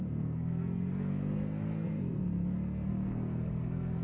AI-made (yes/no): yes